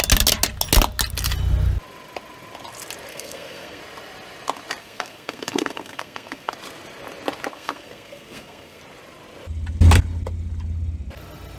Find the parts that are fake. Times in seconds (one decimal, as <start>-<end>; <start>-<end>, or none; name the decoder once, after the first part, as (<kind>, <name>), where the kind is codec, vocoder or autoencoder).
3.1-3.8 (codec, SNAC); 4.8-6.5; 7.5-8.8